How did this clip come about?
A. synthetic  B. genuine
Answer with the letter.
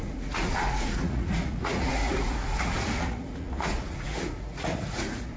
A